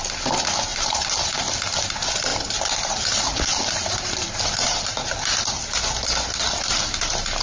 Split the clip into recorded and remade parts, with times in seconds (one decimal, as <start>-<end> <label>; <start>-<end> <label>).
0.0-0.7 recorded; 0.7-1.3 remade; 1.3-2.3 recorded; 2.3-5.4 remade; 5.4-7.4 recorded